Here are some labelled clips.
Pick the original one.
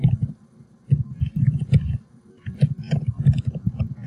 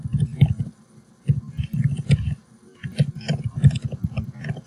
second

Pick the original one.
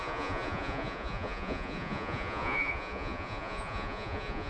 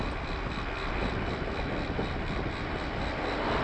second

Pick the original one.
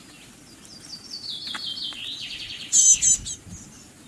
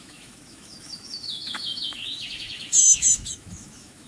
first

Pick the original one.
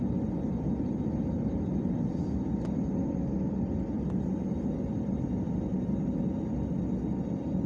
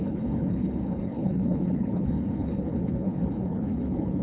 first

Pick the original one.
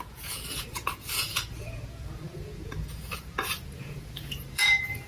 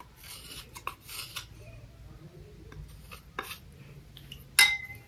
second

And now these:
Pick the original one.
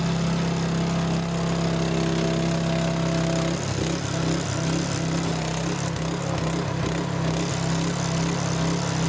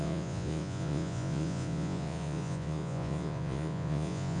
first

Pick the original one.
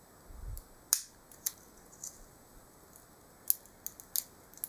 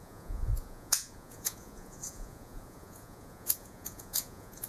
first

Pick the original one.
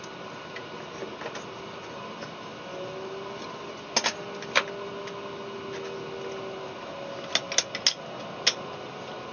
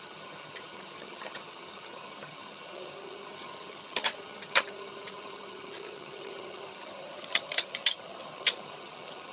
first